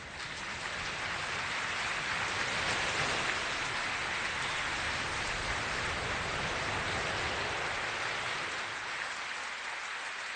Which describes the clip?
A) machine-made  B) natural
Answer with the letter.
B